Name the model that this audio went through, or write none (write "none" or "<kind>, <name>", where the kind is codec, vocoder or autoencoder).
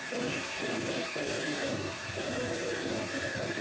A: codec, SNAC